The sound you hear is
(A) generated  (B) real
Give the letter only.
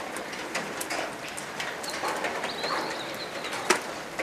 A